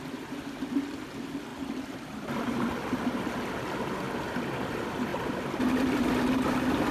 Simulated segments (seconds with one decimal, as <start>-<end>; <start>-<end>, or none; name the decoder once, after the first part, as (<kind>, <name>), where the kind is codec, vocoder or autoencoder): none